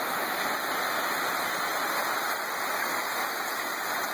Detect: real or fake real